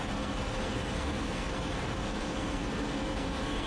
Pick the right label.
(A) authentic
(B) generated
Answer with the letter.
B